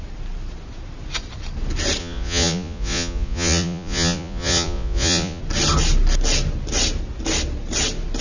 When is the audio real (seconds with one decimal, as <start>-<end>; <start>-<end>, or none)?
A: 0.0-2.0; 5.4-8.2